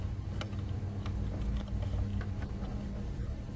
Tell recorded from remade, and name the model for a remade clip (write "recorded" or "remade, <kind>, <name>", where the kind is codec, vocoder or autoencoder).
recorded